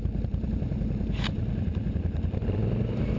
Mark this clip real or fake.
fake